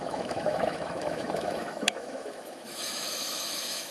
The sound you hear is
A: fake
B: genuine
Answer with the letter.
A